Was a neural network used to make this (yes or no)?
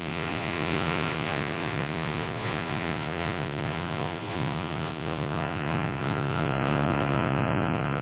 yes